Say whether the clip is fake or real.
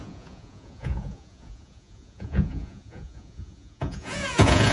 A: fake